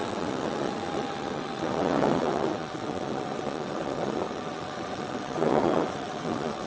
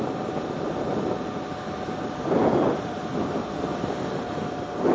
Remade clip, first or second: first